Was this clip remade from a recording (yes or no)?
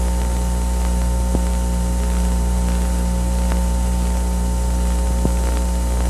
no